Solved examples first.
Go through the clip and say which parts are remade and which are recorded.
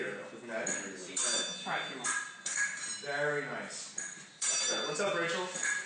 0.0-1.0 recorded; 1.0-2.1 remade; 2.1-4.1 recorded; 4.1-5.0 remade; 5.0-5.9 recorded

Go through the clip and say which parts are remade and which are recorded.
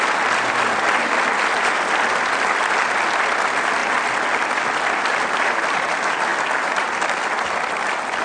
0.0-8.2 recorded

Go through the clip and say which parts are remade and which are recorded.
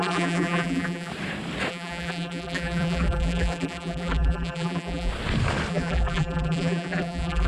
0.0-1.1 remade; 1.1-1.7 recorded; 1.7-5.1 remade; 5.1-5.7 recorded; 5.7-7.5 remade